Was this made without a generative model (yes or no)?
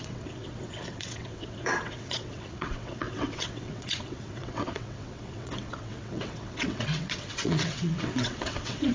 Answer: no